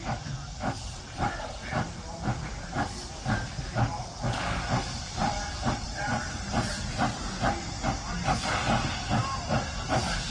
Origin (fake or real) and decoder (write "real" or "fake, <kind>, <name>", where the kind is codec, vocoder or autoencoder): real